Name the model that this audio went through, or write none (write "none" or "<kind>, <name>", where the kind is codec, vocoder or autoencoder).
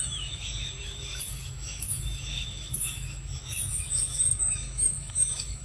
autoencoder, DAC-VAE